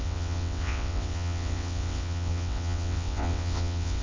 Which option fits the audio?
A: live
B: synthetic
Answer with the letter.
B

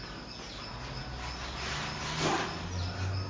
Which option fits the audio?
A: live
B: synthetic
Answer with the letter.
A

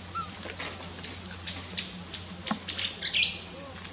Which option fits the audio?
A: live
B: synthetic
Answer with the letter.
A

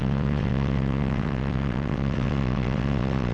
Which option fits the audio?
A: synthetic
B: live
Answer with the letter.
A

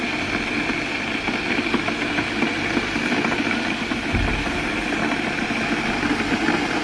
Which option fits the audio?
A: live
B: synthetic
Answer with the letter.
A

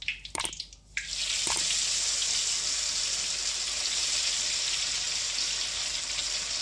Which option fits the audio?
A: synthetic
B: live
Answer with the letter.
B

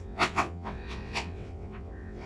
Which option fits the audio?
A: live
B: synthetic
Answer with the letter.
B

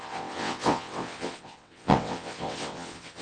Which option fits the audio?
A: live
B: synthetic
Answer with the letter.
B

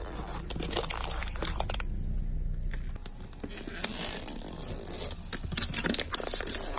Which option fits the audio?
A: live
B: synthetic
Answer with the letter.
A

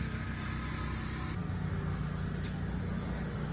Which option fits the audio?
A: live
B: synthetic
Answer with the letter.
A